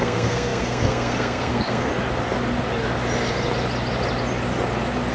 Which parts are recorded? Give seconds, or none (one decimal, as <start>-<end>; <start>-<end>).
1.9-5.1